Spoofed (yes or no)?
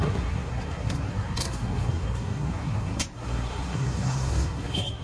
yes